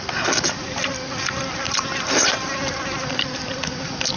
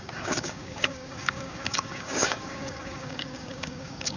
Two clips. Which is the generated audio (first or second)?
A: second